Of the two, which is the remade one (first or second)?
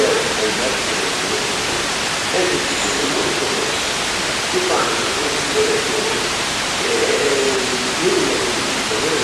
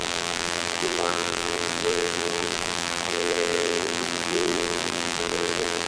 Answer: second